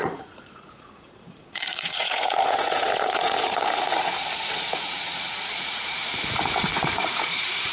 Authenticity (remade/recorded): remade